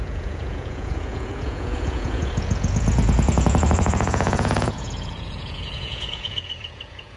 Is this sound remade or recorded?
remade